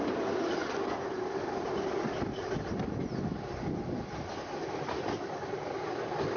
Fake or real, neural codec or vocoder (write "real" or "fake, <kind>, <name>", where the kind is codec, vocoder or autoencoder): real